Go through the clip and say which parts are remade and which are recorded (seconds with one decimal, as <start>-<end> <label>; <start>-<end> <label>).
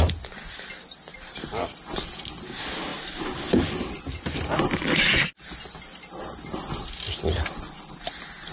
0.0-1.1 recorded; 1.1-1.7 remade; 1.7-8.5 recorded